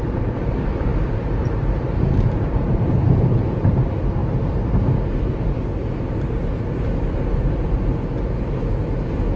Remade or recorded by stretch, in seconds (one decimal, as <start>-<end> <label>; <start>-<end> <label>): 0.0-4.2 remade; 4.2-9.4 recorded